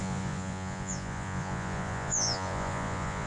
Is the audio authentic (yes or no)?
no